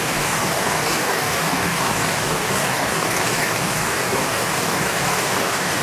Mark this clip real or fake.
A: fake